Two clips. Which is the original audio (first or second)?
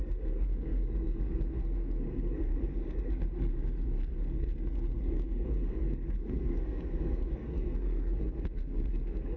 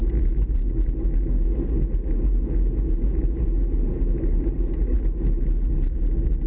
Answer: second